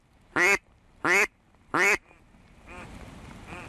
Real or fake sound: fake